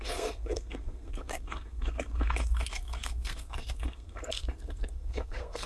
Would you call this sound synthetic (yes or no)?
yes